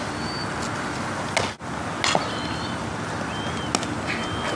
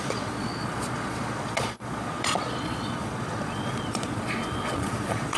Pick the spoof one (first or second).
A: second